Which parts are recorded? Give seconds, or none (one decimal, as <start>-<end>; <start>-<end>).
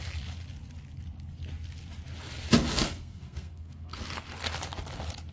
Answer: 0.0-2.7; 4.0-5.3